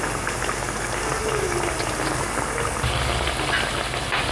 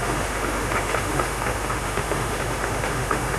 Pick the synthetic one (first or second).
second